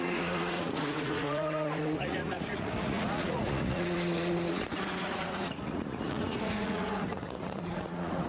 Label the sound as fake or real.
fake